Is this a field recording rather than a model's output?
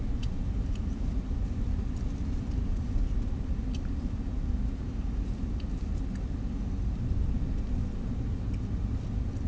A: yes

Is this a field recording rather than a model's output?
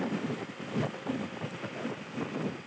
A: yes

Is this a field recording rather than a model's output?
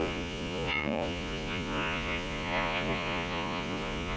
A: no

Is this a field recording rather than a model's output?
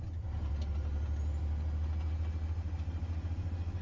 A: yes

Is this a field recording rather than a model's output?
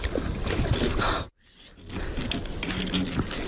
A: yes